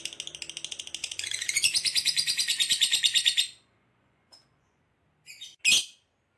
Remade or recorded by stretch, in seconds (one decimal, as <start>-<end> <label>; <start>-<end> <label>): 0.0-1.0 recorded; 1.0-4.8 remade; 4.8-6.4 recorded